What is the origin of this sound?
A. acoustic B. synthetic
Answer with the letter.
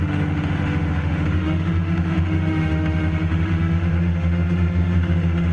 B